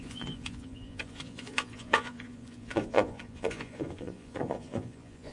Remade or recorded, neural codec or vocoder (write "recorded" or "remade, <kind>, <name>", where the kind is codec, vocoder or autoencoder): remade, vocoder, Vocos